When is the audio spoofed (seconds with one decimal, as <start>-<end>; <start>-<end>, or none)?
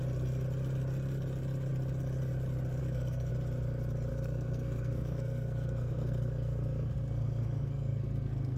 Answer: 2.8-3.3; 4.1-8.6